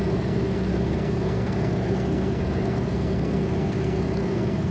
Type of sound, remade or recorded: remade